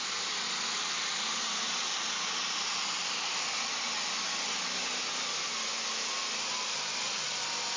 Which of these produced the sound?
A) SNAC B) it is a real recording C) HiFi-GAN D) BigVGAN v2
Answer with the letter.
B